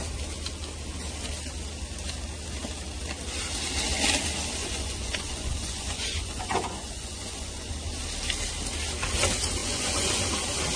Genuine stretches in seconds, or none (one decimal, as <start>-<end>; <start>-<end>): 0.0-4.6; 7.7-9.6; 10.2-10.8